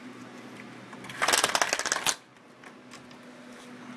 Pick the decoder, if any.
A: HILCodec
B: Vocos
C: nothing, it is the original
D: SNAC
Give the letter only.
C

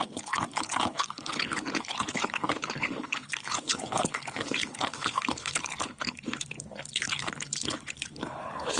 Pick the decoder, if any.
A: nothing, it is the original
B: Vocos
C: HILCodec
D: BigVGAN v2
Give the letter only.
C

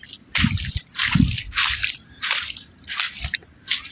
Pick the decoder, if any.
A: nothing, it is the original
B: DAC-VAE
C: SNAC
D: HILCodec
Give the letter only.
A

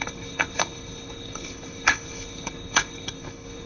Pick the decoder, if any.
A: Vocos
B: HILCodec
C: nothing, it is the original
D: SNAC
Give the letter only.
B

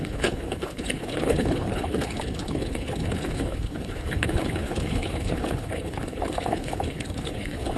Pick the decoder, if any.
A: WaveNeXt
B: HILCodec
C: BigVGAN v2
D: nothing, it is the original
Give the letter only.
B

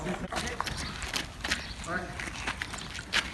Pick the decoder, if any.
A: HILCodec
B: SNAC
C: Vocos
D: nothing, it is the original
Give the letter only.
D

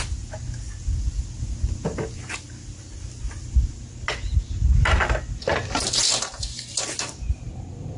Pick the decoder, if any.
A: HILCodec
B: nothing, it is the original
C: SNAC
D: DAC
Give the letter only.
B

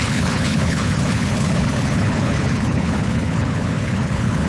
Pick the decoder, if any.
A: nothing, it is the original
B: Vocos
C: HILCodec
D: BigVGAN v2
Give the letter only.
C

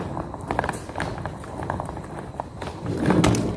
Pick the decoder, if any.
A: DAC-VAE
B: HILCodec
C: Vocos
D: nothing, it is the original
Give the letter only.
D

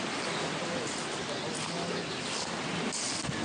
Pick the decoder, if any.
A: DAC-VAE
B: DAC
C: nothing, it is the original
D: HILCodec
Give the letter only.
C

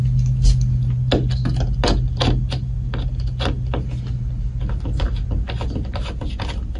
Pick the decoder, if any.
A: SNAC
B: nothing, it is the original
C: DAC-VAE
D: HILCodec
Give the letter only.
B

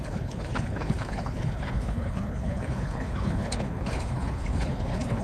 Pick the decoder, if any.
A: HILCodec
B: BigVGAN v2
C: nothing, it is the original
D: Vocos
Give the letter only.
A